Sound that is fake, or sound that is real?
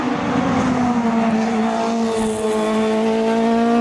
real